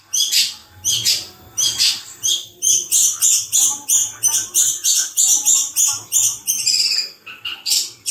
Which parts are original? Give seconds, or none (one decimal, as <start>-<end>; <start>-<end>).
0.6-1.1